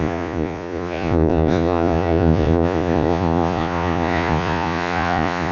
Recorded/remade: remade